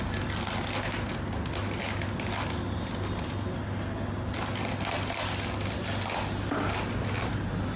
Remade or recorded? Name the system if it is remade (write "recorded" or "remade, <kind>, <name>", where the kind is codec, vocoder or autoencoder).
recorded